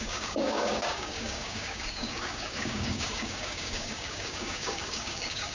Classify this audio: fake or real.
fake